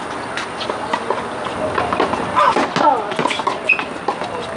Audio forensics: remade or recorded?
recorded